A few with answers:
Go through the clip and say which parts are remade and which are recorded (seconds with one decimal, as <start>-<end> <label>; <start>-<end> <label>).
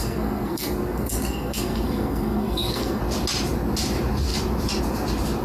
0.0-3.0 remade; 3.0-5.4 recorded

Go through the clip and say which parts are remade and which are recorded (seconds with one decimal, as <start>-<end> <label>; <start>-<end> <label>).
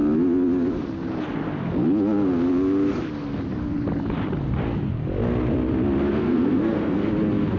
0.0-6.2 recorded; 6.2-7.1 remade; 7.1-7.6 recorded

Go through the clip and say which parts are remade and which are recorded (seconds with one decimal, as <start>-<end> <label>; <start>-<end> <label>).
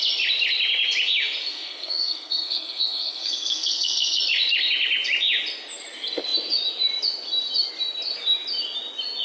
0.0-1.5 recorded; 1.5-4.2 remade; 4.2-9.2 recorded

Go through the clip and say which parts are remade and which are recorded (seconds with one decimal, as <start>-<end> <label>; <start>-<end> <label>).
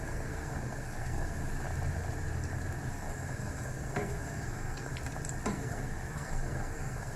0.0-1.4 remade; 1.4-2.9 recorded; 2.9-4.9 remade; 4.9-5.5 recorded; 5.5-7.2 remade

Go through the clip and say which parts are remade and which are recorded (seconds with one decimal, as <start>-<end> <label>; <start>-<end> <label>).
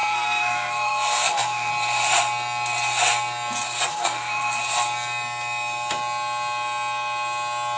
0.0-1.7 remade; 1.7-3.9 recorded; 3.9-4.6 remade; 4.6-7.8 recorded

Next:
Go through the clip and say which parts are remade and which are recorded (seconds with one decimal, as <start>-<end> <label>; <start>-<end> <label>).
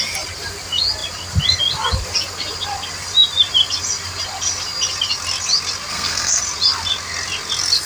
0.0-5.9 recorded; 5.9-6.4 remade; 6.4-7.9 recorded